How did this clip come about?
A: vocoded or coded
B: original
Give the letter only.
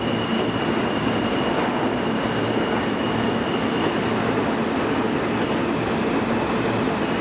B